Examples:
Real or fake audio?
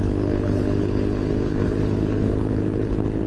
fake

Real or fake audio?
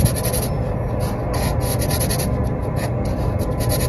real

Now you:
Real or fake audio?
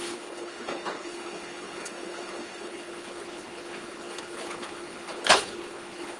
fake